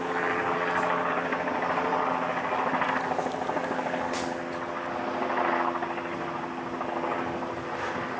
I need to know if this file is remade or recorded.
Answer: recorded